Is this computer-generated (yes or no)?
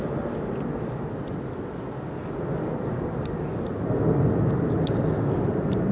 no